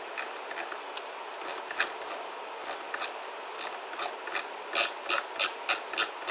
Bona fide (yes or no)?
yes